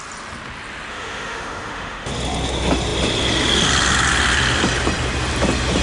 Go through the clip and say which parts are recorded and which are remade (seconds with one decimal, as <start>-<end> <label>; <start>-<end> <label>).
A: 0.0-0.9 recorded; 0.9-2.1 remade; 2.1-5.8 recorded